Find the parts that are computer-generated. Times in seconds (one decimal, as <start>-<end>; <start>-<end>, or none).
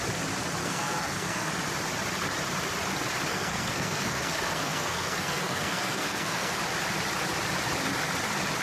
0.6-1.5; 3.3-6.6